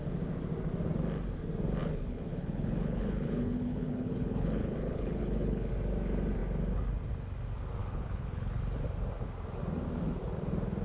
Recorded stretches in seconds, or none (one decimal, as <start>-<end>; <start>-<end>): 0.0-1.8; 5.7-7.8; 8.6-10.8